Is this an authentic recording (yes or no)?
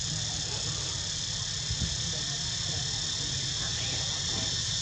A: yes